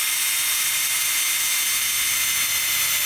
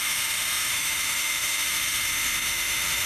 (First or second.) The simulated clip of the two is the second